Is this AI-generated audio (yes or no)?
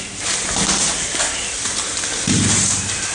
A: no